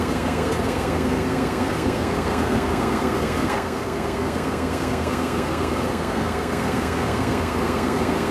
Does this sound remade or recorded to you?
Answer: remade